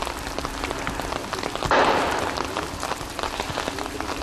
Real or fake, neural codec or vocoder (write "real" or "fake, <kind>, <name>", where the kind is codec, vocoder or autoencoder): real